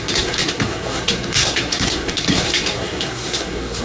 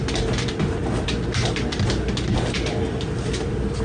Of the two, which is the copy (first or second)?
first